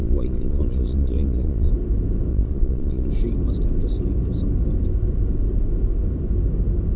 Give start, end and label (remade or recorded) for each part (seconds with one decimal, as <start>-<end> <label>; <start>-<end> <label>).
0.0-1.7 remade; 1.7-2.3 recorded; 2.3-3.1 remade; 3.1-7.0 recorded